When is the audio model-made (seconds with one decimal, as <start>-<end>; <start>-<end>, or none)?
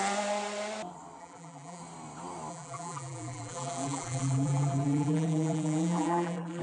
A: 1.2-1.8; 2.5-6.6